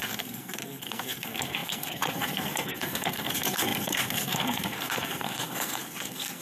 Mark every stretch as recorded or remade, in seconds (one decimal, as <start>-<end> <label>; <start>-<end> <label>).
0.0-6.4 remade